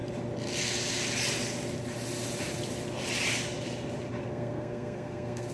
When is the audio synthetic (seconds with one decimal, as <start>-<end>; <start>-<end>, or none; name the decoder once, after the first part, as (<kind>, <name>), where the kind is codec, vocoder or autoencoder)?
4.2-5.5 (codec, SNAC)